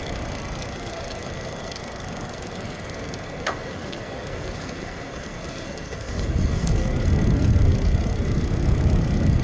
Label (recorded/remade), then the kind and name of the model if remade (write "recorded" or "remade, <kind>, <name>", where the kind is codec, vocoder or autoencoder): remade, codec, SNAC